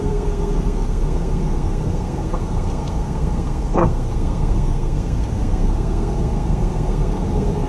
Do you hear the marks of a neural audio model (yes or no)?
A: yes